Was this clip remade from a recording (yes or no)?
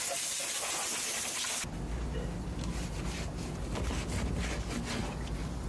no